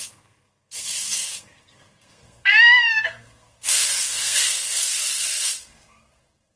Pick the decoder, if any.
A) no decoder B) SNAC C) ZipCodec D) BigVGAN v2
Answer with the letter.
B